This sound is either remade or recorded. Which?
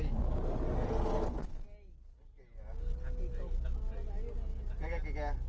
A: recorded